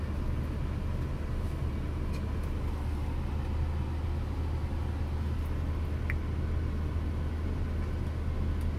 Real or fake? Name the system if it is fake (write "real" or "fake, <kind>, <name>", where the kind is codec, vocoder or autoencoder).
real